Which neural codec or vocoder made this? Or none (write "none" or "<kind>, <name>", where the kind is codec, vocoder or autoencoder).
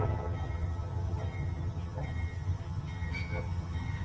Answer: vocoder, HiFi-GAN